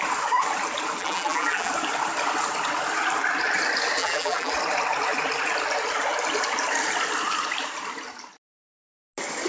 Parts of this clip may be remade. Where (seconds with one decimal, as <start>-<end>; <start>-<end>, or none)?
1.0-1.7; 4.0-4.5